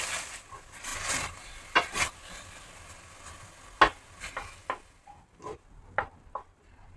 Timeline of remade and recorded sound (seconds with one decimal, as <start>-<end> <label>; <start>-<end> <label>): 0.0-7.0 recorded